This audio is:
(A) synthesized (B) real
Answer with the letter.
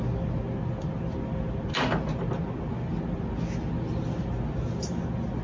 B